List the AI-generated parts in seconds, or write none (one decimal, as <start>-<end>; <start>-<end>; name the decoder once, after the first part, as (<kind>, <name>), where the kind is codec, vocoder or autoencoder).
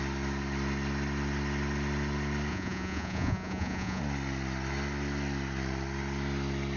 2.5-4.0 (vocoder, Vocos)